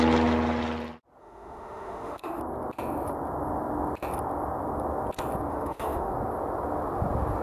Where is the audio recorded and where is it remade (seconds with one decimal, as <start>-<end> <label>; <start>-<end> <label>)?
0.0-1.2 recorded; 1.2-2.4 remade; 2.4-5.5 recorded; 5.5-6.1 remade; 6.1-7.4 recorded